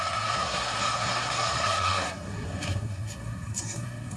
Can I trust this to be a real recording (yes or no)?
no